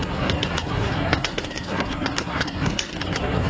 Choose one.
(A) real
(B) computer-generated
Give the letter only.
B